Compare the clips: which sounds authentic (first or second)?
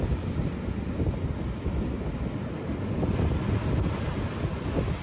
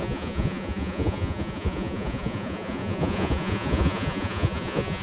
first